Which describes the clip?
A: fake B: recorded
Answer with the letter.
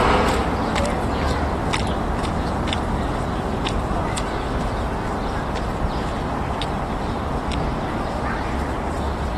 B